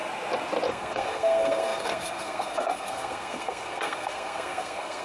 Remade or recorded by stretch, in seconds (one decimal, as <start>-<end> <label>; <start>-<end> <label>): 0.0-0.7 recorded; 0.7-5.0 remade